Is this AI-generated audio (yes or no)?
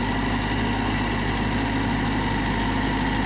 no